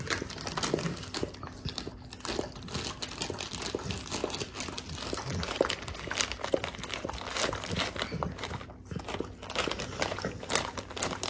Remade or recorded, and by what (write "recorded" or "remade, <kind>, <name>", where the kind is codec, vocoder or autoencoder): recorded